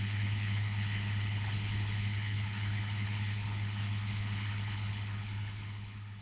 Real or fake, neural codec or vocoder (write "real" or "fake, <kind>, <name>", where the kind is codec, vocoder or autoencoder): fake, codec, HILCodec